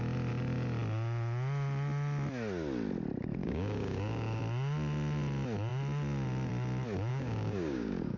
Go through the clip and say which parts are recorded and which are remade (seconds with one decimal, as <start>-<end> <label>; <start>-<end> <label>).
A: 0.0-3.4 recorded; 3.4-4.4 remade; 4.4-7.1 recorded; 7.1-8.2 remade